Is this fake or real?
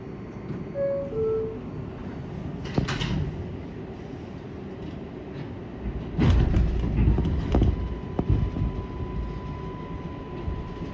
real